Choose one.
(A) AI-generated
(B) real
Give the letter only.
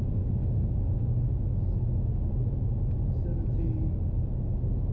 B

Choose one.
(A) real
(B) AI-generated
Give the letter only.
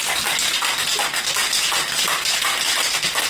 A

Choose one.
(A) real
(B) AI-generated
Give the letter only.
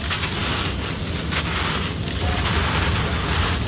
A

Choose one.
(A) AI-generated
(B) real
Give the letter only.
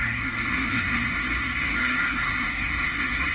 A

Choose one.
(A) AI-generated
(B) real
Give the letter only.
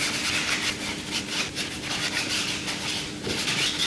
B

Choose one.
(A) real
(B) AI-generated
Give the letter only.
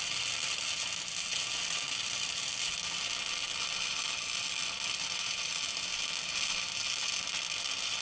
A